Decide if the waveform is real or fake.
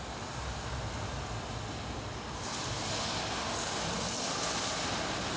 real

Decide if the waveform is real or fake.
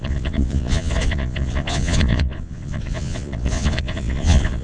fake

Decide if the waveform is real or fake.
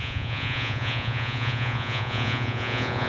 fake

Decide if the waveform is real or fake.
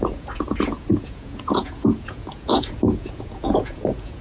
fake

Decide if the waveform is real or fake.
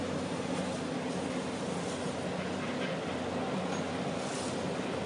real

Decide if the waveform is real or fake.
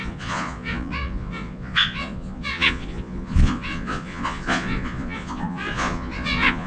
fake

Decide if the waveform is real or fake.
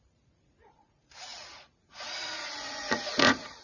fake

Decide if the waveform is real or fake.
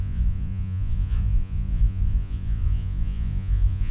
fake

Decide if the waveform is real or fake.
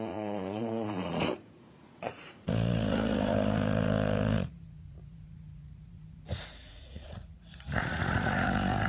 fake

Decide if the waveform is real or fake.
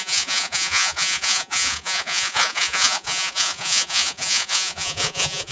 fake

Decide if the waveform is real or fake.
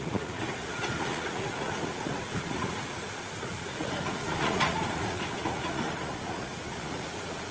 fake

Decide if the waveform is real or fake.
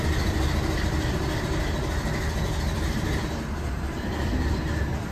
real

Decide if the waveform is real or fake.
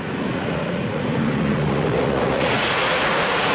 fake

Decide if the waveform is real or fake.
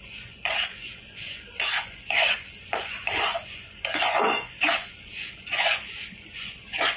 fake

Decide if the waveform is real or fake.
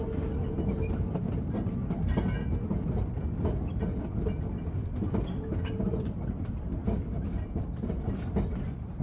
real